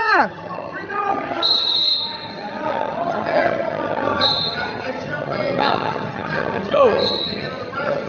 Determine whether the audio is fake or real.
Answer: fake